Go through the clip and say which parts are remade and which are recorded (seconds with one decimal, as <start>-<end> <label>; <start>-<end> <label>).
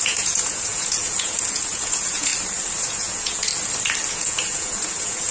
0.0-2.3 remade; 2.3-2.8 recorded; 2.8-3.5 remade; 3.5-4.1 recorded; 4.1-5.3 remade